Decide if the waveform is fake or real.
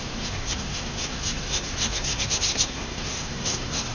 fake